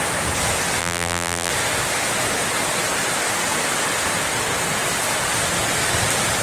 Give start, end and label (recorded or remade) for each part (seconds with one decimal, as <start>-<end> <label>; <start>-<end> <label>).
0.0-0.8 recorded; 0.8-1.5 remade; 1.5-6.4 recorded